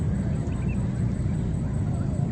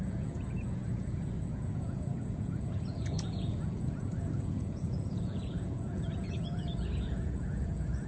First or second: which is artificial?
second